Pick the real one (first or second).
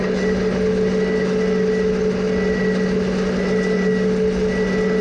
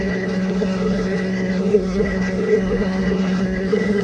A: first